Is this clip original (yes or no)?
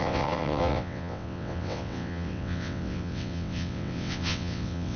no